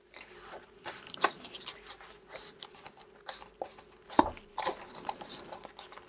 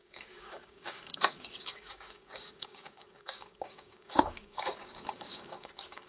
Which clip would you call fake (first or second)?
second